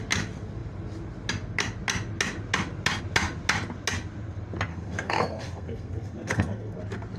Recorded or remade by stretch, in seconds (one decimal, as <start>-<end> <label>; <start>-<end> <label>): 0.0-4.7 recorded; 4.7-6.8 remade; 6.8-7.2 recorded